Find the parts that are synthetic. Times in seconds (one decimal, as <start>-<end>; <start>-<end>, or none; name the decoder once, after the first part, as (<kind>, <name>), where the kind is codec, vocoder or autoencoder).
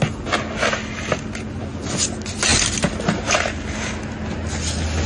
none